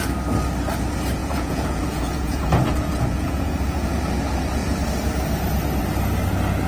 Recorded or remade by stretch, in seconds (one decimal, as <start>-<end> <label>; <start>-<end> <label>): 0.0-1.2 recorded; 1.2-4.0 remade; 4.0-6.7 recorded